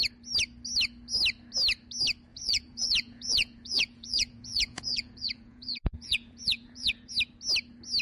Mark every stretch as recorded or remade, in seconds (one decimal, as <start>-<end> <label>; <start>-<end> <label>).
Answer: 0.0-2.3 recorded; 2.3-7.1 remade; 7.1-8.0 recorded